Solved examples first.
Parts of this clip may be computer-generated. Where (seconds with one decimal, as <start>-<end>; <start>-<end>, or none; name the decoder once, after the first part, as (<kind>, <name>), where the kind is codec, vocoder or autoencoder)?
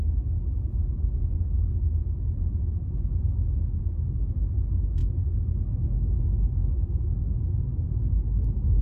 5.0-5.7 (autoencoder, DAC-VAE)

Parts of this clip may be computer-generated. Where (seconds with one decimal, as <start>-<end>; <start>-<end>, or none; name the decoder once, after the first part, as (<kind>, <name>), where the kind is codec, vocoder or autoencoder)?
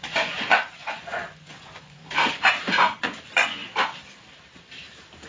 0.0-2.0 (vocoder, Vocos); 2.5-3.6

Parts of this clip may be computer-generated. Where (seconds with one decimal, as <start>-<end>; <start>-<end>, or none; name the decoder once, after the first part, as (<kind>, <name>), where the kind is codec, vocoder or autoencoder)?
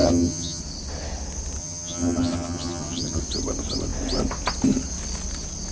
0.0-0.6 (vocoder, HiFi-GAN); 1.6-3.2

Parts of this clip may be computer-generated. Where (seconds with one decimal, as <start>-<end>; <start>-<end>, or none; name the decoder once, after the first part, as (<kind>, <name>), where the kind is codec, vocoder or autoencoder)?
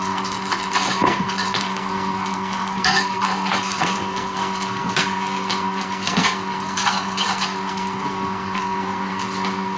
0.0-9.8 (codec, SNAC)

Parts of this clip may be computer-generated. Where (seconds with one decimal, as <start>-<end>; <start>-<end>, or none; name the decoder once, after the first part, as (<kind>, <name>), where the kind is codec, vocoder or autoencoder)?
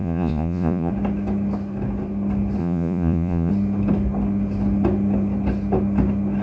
0.0-0.9 (vocoder, Vocos); 2.6-3.5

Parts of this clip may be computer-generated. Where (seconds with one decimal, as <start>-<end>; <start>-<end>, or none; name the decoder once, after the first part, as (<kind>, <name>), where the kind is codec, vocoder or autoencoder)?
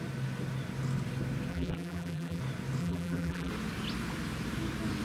1.5-2.4 (vocoder, BigVGAN v2); 2.8-3.5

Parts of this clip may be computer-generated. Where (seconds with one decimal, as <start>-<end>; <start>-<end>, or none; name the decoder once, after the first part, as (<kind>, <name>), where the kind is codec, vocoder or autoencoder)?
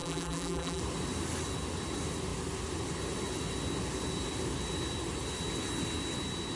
0.0-0.8 (vocoder, BigVGAN v2)